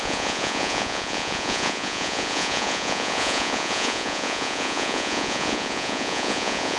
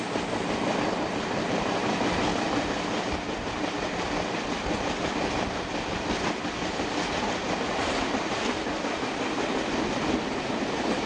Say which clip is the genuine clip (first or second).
second